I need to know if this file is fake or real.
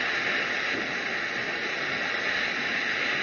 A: real